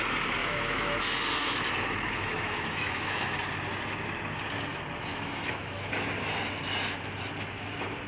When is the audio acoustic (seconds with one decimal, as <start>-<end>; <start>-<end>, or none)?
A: 0.0-0.4; 1.0-2.2; 3.4-5.1; 5.9-8.1